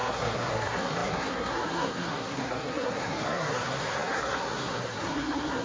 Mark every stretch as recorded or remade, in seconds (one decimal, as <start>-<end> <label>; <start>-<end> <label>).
0.0-5.6 remade